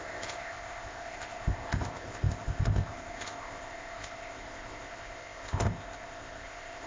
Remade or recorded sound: remade